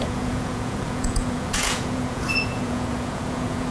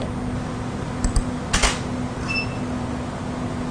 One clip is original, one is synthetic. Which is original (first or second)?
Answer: second